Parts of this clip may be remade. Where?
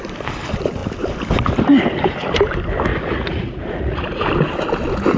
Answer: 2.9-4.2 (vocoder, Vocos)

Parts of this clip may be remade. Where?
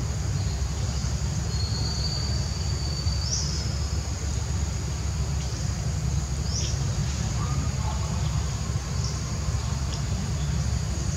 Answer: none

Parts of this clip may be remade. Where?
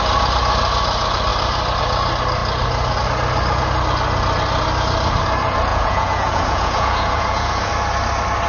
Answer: 5.7-7.7 (vocoder, Vocos)